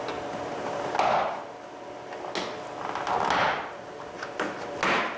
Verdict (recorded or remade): recorded